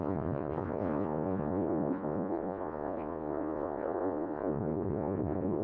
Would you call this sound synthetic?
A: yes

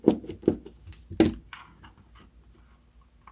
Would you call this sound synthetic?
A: no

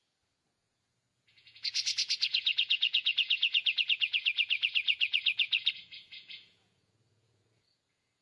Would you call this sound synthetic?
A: yes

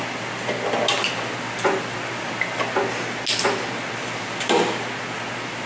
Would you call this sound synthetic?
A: no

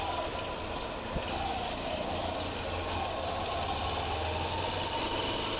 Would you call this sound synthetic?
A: no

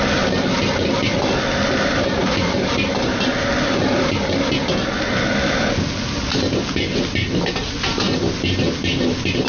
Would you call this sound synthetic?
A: no